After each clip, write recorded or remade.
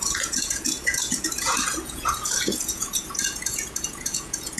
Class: remade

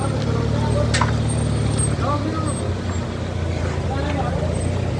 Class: recorded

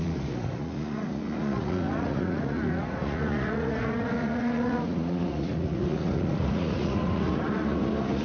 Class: remade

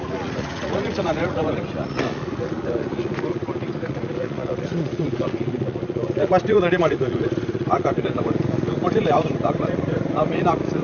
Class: remade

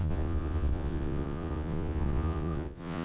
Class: remade